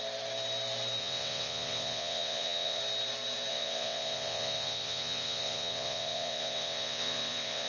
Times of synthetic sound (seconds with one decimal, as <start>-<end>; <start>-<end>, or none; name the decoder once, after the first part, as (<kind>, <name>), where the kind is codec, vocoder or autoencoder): 1.0-2.8 (vocoder, WaveNeXt); 3.5-7.7